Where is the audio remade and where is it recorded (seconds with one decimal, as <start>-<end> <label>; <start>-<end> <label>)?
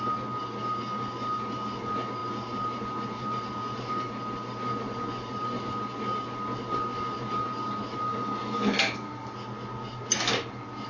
0.0-10.9 recorded